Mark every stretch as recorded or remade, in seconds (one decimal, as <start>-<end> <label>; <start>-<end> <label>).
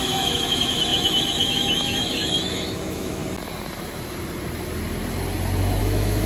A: 0.0-3.2 remade; 3.2-5.8 recorded; 5.8-6.3 remade